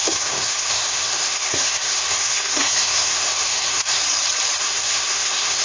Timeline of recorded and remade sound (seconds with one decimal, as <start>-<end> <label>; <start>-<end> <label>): 0.0-4.0 remade; 4.0-4.6 recorded; 4.6-5.6 remade